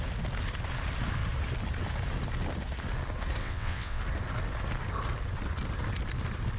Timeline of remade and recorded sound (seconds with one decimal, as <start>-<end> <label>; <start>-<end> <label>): 0.0-3.4 recorded; 3.4-4.0 remade; 4.0-6.6 recorded